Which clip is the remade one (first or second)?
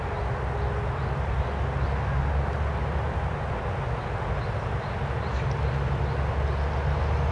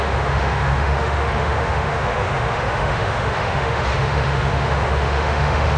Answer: second